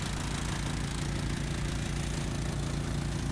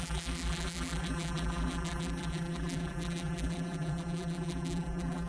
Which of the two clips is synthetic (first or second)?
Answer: second